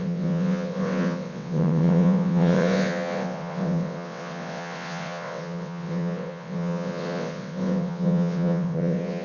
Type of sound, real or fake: fake